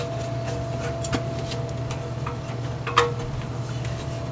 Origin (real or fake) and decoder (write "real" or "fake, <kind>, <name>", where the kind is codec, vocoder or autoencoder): real